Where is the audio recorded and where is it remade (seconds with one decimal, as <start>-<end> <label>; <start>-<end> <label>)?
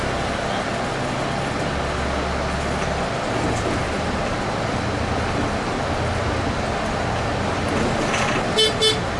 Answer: 0.0-9.2 recorded